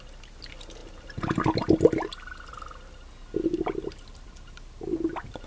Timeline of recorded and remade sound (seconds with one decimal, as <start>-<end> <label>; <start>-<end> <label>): 0.0-5.5 recorded